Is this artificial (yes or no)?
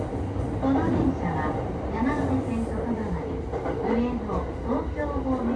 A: no